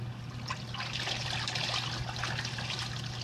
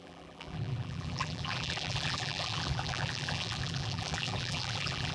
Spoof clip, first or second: second